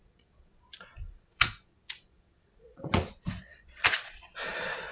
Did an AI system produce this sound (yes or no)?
yes